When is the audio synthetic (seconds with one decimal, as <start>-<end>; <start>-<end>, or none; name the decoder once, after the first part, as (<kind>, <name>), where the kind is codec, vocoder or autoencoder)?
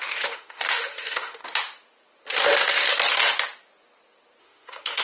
0.0-1.4 (autoencoder, DAC-VAE); 4.4-5.0